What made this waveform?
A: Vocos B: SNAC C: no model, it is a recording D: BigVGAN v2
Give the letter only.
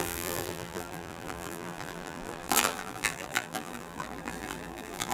D